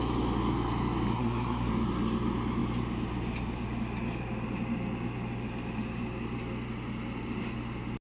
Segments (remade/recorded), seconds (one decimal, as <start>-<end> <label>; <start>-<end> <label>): 0.0-1.1 recorded; 1.1-1.7 remade; 1.7-8.0 recorded